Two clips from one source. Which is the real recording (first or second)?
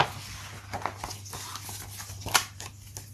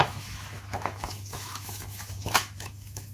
first